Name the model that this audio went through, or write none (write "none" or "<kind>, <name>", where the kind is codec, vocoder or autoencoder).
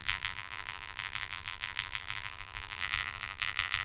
vocoder, BigVGAN v2